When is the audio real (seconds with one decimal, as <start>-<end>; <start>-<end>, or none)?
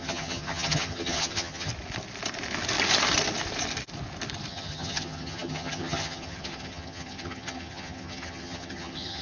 1.7-4.5